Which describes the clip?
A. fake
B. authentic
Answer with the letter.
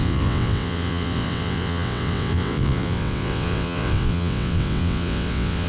A